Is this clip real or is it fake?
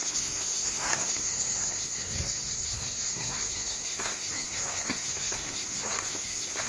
fake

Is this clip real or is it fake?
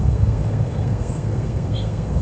fake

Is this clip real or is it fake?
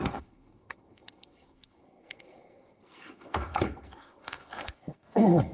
fake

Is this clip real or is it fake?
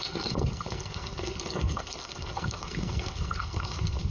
fake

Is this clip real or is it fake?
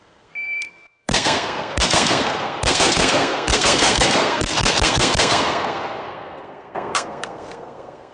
fake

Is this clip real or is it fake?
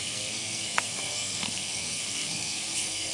fake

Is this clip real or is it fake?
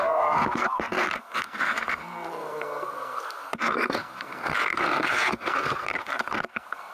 fake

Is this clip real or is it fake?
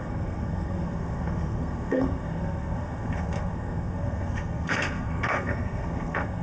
fake